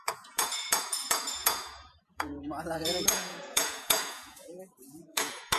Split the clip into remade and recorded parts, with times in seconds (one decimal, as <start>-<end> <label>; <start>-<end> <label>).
0.0-5.6 remade